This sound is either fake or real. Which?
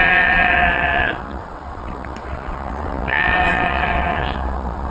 fake